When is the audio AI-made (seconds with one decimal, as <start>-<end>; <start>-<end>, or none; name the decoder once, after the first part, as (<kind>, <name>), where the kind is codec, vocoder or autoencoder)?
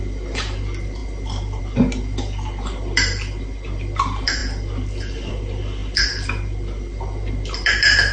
none